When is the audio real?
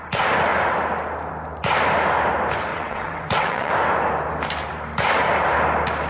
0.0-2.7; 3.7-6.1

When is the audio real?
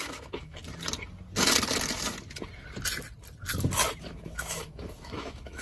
0.6-4.0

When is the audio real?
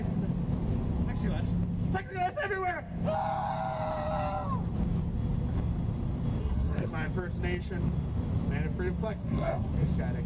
0.0-6.4; 6.9-9.2; 9.7-10.3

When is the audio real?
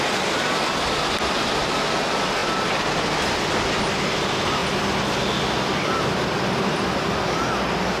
0.0-8.0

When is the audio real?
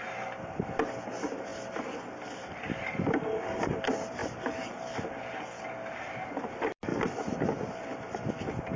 0.0-1.5; 2.7-4.2; 5.2-8.8